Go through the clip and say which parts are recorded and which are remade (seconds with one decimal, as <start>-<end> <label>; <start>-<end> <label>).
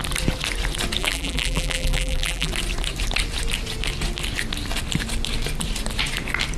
0.0-1.0 recorded; 1.0-2.5 remade; 2.5-6.6 recorded